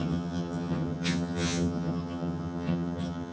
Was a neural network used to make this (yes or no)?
yes